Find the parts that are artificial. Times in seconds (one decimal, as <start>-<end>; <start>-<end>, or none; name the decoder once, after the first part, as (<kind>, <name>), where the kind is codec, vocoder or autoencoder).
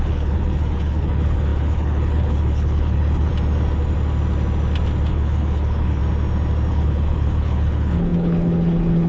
0.0-3.3 (codec, HILCodec); 5.1-6.0; 6.7-9.1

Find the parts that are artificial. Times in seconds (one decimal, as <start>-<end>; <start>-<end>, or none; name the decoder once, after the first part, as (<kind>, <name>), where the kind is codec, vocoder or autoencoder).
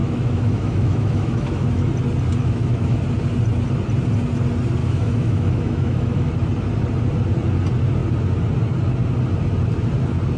0.0-1.9 (autoencoder, DAC-VAE); 2.4-3.0; 4.8-6.3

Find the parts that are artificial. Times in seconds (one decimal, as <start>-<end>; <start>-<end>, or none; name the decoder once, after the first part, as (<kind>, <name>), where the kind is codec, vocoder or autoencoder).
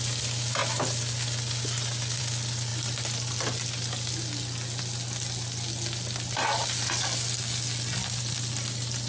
none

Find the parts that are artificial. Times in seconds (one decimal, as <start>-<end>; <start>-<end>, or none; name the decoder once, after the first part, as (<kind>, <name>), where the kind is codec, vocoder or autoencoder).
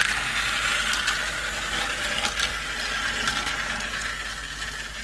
none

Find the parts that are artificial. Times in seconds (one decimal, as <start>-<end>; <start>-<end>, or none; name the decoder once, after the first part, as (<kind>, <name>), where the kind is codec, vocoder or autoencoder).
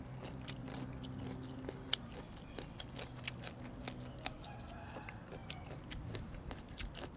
5.4-7.2 (vocoder, BigVGAN v2)